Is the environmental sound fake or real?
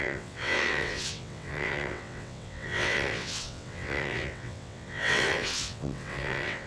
fake